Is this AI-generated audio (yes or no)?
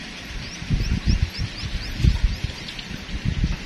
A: no